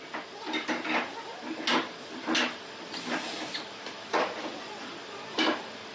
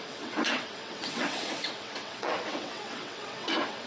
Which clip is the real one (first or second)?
first